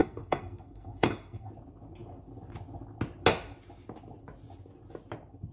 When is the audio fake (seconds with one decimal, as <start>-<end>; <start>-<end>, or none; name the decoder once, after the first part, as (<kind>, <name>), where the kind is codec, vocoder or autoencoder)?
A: 0.0-1.5 (codec, SNAC)